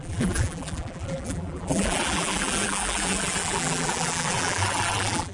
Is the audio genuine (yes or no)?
no